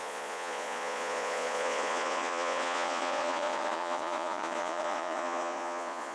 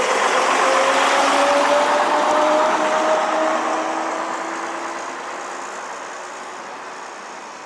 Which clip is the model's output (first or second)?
first